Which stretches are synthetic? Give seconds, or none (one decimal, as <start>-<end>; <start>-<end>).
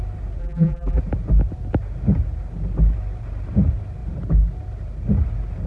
0.4-1.0